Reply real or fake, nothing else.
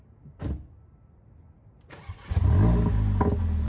real